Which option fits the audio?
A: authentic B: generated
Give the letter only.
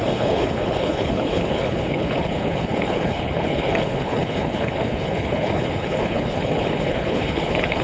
B